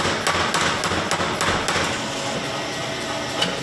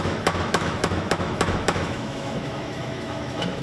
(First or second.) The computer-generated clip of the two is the second